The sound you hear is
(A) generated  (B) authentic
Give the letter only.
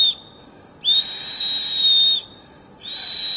B